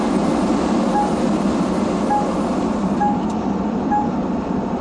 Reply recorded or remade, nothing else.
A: remade